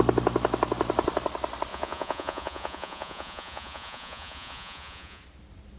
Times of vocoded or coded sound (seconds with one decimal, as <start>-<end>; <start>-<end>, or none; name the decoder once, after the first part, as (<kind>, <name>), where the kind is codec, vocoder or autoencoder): 1.7-5.2 (vocoder, Vocos)